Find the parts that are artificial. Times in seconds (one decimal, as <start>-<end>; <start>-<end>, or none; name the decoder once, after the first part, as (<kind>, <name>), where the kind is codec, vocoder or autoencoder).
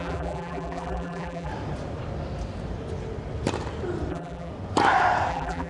0.0-1.5 (vocoder, BigVGAN v2); 4.1-4.5; 5.3-5.7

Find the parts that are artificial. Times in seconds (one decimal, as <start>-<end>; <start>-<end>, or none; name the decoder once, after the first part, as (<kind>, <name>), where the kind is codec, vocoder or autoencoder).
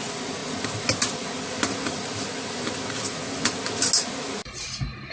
none